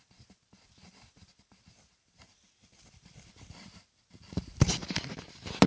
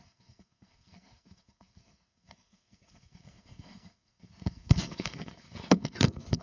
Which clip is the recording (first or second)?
first